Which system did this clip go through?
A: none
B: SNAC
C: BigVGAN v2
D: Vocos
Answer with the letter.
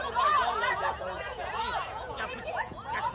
D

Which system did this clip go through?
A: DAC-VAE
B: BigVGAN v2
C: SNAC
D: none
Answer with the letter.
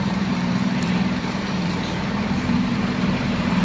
B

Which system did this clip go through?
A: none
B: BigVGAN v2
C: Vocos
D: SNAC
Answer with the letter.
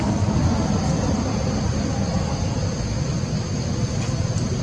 A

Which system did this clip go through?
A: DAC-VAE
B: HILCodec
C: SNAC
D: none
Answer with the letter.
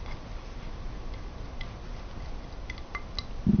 D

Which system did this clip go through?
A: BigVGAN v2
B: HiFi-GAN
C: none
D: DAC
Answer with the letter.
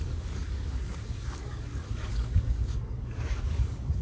D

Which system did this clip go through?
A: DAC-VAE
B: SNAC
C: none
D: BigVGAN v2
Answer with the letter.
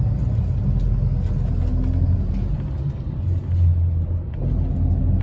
C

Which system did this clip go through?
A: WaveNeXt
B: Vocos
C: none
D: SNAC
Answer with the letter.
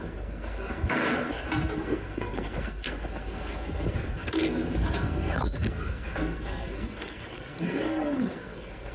D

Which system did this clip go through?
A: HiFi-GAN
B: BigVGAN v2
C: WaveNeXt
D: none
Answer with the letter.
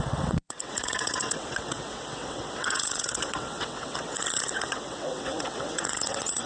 C